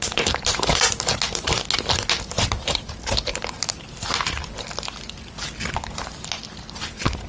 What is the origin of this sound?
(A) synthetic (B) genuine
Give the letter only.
B